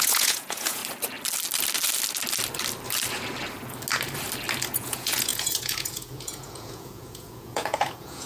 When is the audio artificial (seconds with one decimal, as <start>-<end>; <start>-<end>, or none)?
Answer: 0.0-0.8; 4.7-8.3